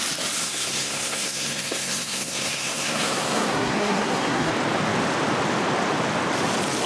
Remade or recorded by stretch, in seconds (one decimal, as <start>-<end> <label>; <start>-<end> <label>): 0.0-0.4 recorded; 0.4-4.5 remade; 4.5-6.9 recorded